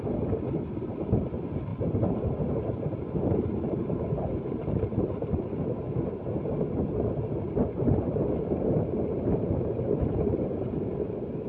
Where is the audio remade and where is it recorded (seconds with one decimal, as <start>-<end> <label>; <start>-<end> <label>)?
0.0-1.7 recorded; 1.7-5.4 remade; 5.4-9.1 recorded; 9.1-10.8 remade; 10.8-11.5 recorded